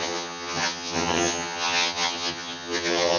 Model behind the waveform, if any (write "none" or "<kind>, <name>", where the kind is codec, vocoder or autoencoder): vocoder, HiFi-GAN